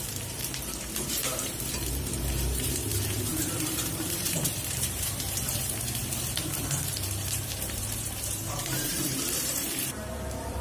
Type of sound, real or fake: fake